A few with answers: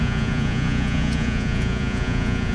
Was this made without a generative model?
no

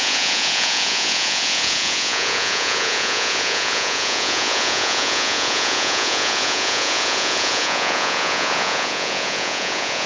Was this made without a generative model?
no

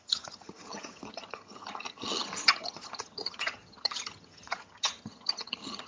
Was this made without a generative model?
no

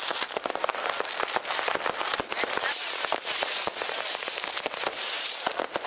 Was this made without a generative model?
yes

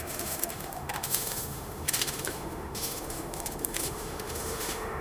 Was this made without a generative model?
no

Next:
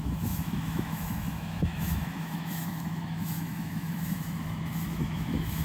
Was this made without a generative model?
no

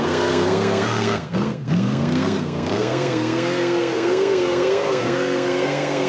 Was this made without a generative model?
no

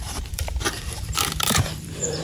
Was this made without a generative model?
no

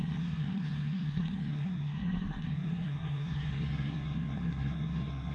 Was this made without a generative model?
no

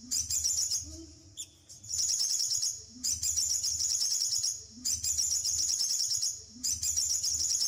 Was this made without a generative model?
no